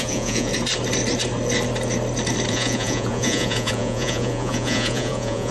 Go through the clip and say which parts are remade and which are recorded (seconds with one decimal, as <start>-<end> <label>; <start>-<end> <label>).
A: 0.0-0.5 remade; 0.5-2.5 recorded; 2.5-5.5 remade